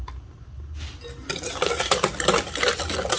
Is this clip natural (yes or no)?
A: yes